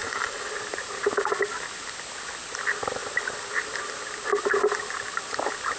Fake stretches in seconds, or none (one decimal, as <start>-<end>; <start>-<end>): 0.0-0.5